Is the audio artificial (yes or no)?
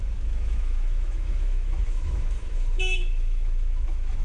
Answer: yes